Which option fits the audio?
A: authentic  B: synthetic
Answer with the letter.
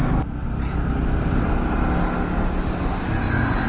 A